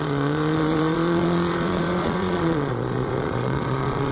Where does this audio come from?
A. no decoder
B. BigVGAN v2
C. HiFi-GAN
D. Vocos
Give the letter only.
D